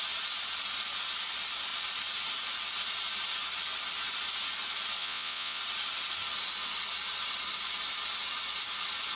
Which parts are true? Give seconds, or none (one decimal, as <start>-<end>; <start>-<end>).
0.0-5.0; 5.6-9.2